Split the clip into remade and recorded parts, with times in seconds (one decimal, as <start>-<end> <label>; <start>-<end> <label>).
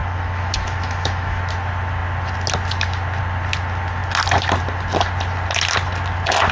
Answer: 0.0-1.4 remade; 1.4-6.5 recorded